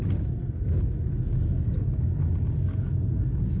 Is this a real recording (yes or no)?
yes